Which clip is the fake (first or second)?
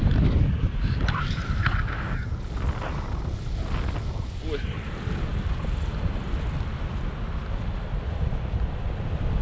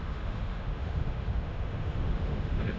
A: second